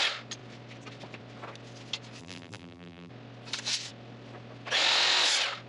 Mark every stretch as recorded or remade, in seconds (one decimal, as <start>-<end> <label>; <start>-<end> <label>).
0.0-2.2 recorded; 2.2-3.1 remade; 3.1-5.7 recorded